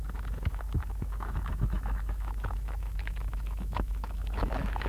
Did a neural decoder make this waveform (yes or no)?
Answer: yes